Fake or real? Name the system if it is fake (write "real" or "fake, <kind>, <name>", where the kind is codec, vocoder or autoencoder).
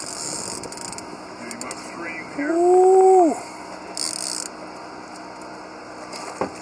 real